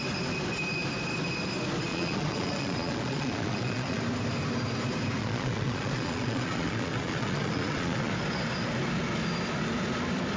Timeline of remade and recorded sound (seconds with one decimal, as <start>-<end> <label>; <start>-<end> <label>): 0.0-1.9 recorded; 1.9-4.0 remade; 4.0-5.2 recorded; 5.2-8.1 remade; 8.1-10.4 recorded